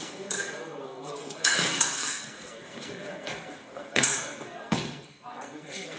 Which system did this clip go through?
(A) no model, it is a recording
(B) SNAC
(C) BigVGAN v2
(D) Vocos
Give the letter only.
B